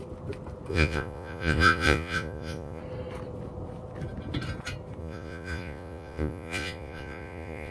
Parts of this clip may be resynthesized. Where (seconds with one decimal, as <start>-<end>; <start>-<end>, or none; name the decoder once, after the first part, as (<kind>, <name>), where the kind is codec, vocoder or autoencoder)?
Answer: 0.7-2.8 (vocoder, Vocos); 5.0-7.7